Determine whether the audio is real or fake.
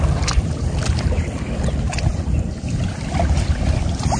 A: real